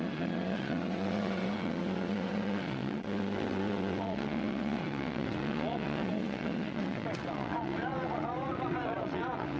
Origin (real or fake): fake